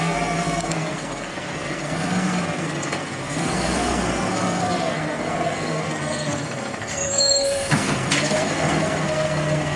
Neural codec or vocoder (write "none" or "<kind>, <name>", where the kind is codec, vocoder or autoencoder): codec, SNAC